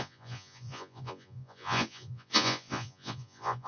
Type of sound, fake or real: fake